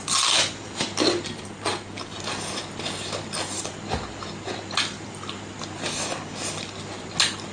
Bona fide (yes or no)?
yes